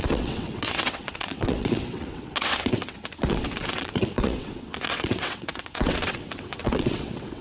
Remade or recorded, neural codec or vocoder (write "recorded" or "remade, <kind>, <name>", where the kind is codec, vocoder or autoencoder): remade, vocoder, WaveNeXt